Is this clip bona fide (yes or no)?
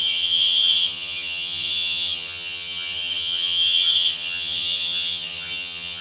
no